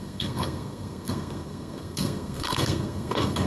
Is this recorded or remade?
remade